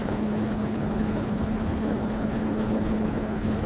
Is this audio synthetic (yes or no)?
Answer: yes